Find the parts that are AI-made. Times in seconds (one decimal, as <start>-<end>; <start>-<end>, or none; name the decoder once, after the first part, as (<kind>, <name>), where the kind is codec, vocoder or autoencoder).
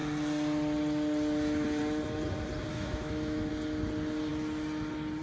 2.7-3.5 (autoencoder, DAC-VAE)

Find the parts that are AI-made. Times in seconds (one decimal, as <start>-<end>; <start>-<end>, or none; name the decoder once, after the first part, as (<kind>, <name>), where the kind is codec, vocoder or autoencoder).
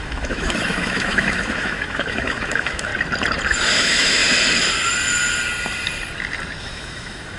0.0-2.9 (autoencoder, DAC-VAE); 3.8-4.2; 6.6-7.4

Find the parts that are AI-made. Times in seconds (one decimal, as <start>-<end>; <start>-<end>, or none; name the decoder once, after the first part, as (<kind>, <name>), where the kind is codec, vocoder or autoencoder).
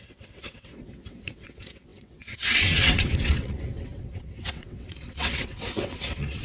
0.0-6.4 (vocoder, WaveNeXt)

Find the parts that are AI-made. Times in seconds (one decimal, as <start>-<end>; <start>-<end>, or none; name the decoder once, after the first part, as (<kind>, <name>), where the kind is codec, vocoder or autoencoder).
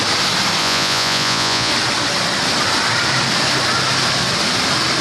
0.6-1.7 (vocoder, Vocos)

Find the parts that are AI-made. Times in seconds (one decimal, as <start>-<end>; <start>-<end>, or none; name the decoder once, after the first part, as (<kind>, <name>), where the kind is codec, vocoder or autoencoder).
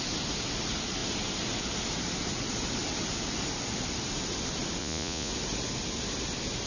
4.8-5.3 (vocoder, Vocos)